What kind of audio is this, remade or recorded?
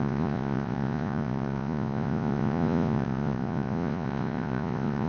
remade